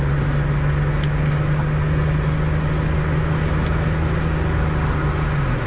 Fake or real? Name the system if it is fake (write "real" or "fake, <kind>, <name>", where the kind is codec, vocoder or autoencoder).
real